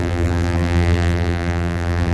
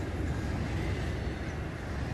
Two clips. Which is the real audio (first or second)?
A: second